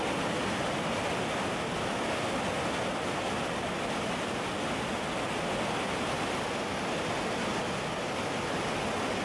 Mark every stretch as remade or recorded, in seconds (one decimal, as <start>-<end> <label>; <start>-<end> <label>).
0.0-0.4 recorded; 0.4-4.5 remade; 4.5-7.5 recorded; 7.5-8.7 remade; 8.7-9.2 recorded